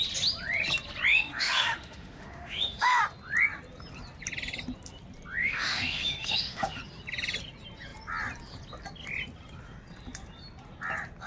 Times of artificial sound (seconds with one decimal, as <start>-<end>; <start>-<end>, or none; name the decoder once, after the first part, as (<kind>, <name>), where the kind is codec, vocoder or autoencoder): 1.1-3.0 (autoencoder, DAC-VAE); 5.4-6.8